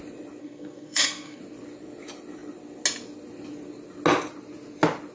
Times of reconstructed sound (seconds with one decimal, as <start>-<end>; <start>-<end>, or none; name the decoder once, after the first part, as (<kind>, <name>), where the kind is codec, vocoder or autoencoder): 0.4-1.4 (codec, SNAC)